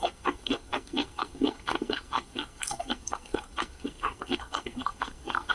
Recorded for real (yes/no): no